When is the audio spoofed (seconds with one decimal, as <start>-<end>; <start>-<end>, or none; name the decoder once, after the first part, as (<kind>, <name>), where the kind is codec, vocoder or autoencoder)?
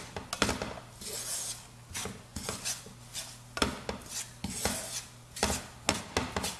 2.3-2.8 (vocoder, Vocos)